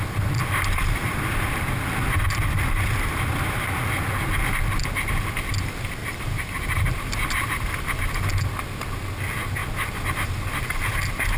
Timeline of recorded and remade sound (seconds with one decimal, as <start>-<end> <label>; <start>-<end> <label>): 0.0-1.0 recorded; 1.0-3.6 remade; 3.6-6.0 recorded; 6.0-8.3 remade; 8.3-9.6 recorded; 9.6-10.5 remade; 10.5-11.4 recorded